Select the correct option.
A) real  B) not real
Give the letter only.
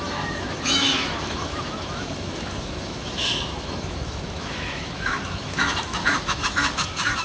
B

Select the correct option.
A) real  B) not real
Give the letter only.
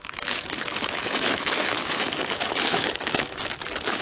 B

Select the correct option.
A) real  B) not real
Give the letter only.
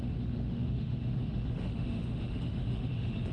B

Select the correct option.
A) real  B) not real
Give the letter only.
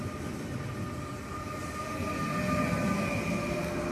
A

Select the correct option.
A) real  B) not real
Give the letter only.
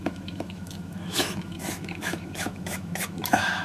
B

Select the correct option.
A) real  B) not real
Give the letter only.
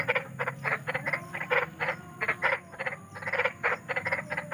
A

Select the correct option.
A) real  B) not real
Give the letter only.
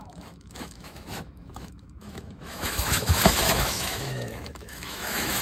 B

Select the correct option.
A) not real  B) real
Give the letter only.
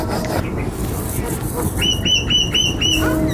B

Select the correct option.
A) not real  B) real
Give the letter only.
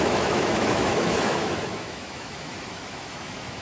A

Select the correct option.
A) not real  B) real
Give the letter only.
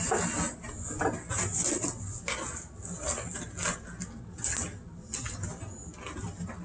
B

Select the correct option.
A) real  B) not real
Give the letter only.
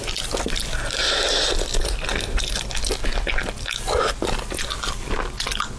A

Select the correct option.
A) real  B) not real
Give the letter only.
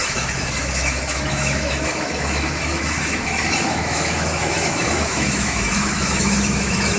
B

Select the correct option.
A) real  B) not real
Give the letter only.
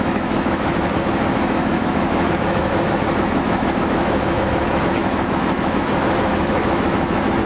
B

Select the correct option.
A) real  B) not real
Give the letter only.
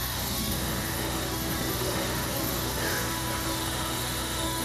B